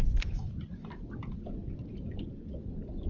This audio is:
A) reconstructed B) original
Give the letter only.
B